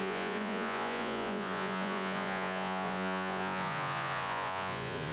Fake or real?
fake